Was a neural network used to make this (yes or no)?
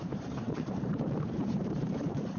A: yes